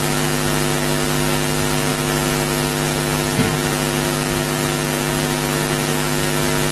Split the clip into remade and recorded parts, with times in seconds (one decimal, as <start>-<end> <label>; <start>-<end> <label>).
0.0-6.7 recorded